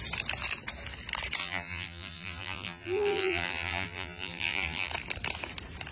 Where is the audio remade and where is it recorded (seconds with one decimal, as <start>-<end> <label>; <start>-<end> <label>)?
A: 0.0-1.4 recorded; 1.4-4.9 remade; 4.9-5.9 recorded